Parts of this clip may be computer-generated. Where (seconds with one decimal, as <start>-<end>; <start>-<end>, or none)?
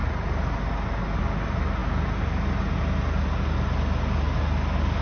none